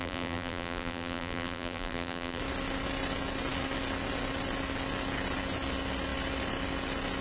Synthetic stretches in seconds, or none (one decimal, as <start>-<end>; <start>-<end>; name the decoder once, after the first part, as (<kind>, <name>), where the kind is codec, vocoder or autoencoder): 0.0-2.4 (vocoder, BigVGAN v2)